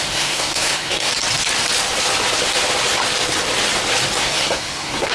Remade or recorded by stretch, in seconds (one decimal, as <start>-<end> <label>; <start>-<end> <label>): 0.0-1.1 remade; 1.1-4.2 recorded; 4.2-5.1 remade